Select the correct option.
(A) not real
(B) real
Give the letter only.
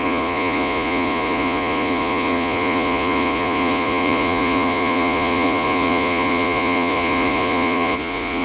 A